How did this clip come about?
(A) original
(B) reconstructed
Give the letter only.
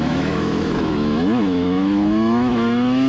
B